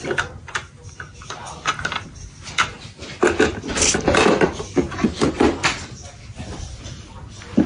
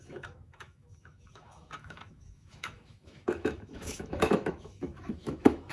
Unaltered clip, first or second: first